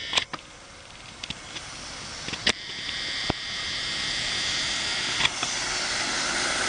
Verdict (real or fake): real